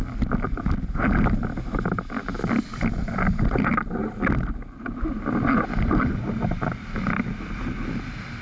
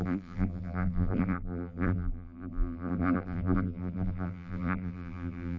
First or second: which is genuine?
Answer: first